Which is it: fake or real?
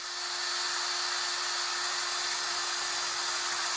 real